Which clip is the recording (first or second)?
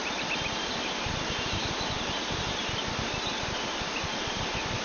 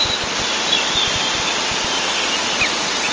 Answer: second